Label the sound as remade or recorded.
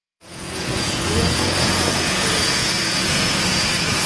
remade